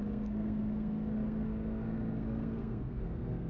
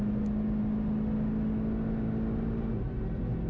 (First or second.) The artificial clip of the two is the first